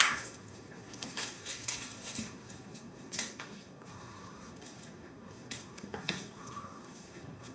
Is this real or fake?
fake